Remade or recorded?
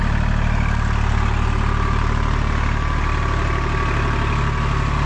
recorded